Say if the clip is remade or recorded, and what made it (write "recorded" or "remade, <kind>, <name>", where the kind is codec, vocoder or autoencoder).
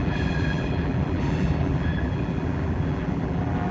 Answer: remade, vocoder, BigVGAN v2